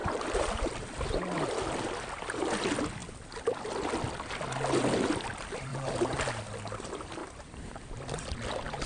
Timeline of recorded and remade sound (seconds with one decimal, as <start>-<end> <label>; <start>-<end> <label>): 0.0-0.8 remade; 0.8-5.7 recorded; 5.7-6.2 remade; 6.2-7.2 recorded; 7.2-7.8 remade; 7.8-8.9 recorded